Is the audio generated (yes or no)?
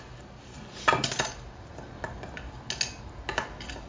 no